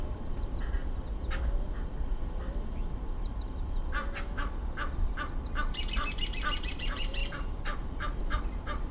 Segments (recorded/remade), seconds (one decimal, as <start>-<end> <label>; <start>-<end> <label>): 0.0-0.8 remade; 0.8-1.4 recorded; 1.4-3.8 remade; 3.8-6.6 recorded; 6.6-7.2 remade; 7.2-8.2 recorded; 8.2-8.9 remade